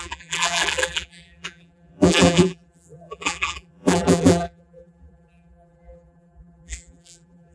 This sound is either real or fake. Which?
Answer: fake